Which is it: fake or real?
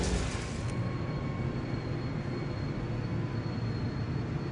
real